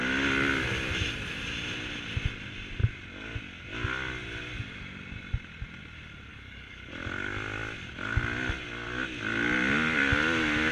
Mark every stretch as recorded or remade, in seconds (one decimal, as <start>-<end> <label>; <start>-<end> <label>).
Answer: 0.0-6.3 recorded; 6.3-6.9 remade; 6.9-10.7 recorded